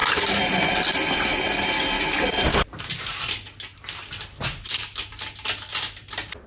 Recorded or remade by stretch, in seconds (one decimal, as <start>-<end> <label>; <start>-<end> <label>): 0.0-1.7 remade; 1.7-6.5 recorded